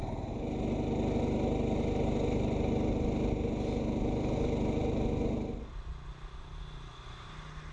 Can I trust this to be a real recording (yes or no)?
yes